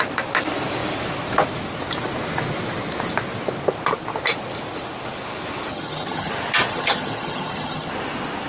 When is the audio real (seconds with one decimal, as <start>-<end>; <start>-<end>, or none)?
0.0-5.7; 6.3-6.7; 7.9-8.5